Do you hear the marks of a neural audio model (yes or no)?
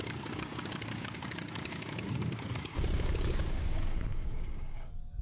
yes